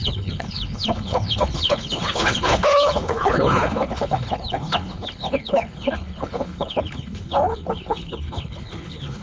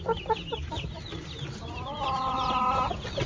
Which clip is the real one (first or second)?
second